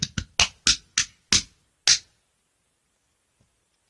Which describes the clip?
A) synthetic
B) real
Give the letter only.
B